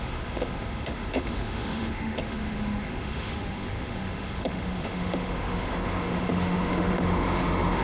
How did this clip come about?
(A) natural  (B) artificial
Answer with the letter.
B